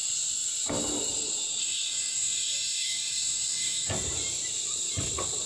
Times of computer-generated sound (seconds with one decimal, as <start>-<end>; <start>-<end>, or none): 1.6-3.9